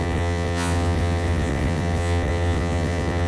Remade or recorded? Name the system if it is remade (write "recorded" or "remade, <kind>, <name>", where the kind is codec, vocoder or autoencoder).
remade, vocoder, WaveNeXt